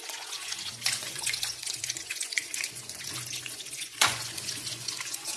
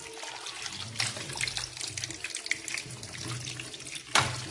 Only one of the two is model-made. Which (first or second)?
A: first